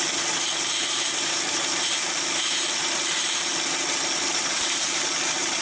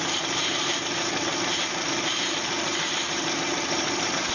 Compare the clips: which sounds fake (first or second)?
second